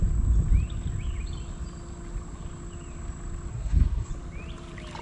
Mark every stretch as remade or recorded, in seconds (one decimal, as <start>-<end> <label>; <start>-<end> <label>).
0.0-3.5 recorded; 3.5-4.1 remade; 4.1-5.0 recorded